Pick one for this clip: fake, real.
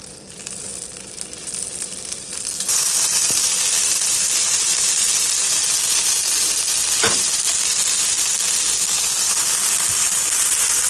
real